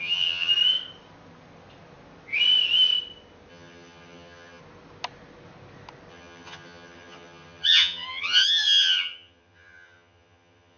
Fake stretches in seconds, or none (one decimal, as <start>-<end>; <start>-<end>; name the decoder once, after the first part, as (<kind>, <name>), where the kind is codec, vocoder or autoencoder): 0.0-0.5 (vocoder, HiFi-GAN); 3.5-4.6; 6.1-10.8